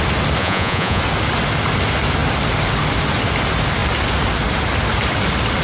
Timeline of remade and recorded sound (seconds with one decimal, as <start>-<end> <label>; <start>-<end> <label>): 0.0-0.4 recorded; 0.4-1.0 remade; 1.0-5.6 recorded